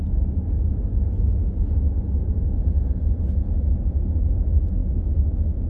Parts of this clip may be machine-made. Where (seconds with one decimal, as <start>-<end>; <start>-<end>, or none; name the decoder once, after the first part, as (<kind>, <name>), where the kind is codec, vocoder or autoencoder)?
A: 4.8-5.7 (autoencoder, DAC-VAE)